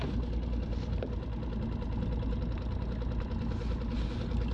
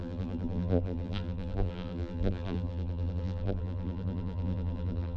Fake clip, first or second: second